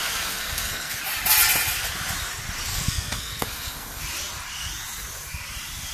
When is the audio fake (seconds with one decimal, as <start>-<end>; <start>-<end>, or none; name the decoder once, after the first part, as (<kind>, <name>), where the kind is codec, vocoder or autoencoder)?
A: 0.0-1.0 (codec, SNAC); 2.7-4.0